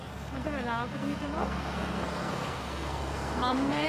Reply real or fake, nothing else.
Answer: fake